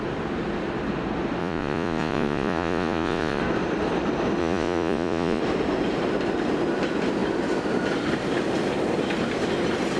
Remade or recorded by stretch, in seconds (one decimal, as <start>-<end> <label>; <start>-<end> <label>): 0.0-1.4 recorded; 1.4-3.4 remade; 3.4-4.4 recorded; 4.4-5.4 remade; 5.4-10.0 recorded

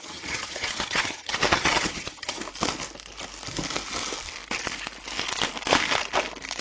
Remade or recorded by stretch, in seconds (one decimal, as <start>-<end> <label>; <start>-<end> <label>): 0.0-2.4 remade; 2.4-6.6 recorded

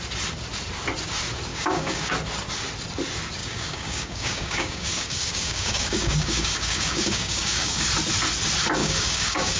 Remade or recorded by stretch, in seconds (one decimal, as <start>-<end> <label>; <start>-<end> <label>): 0.0-1.5 recorded; 1.5-2.1 remade; 2.1-3.4 recorded; 3.4-7.9 remade; 7.9-8.8 recorded; 8.8-9.6 remade

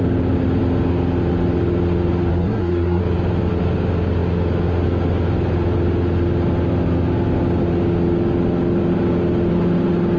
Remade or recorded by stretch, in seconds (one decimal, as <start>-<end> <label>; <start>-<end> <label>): 0.0-2.3 recorded; 2.3-3.0 remade; 3.0-10.2 recorded

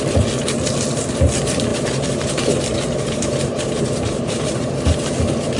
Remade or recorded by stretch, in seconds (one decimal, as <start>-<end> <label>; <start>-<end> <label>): 0.0-1.7 recorded; 1.7-5.1 remade; 5.1-5.6 recorded